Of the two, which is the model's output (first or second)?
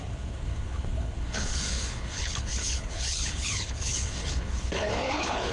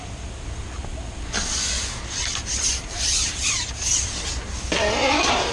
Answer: first